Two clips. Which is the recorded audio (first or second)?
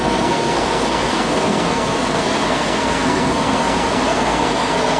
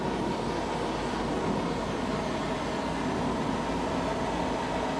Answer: second